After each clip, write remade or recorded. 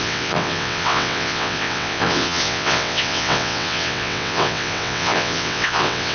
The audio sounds remade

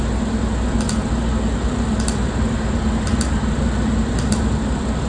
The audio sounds recorded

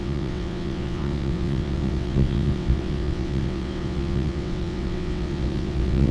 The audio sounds remade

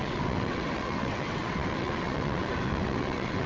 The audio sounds remade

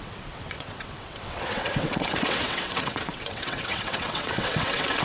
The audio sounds remade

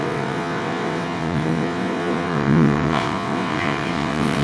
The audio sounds remade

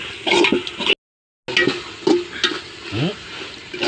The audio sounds recorded